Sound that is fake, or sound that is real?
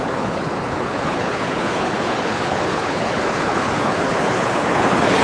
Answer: fake